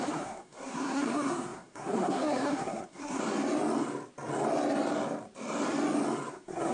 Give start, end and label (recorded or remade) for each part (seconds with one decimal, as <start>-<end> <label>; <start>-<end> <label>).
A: 0.0-3.2 remade; 3.2-6.3 recorded; 6.3-6.7 remade